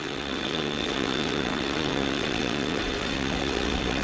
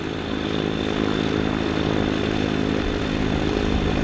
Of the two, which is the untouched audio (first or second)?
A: second